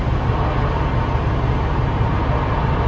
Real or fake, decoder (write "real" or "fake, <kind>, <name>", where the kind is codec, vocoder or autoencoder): real